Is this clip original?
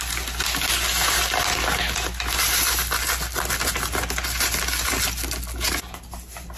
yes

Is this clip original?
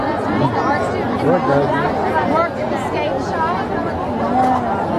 yes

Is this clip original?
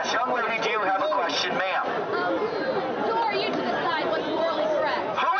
yes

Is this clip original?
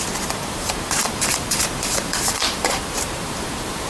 no